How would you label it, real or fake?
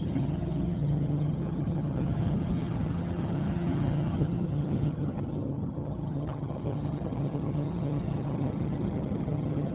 fake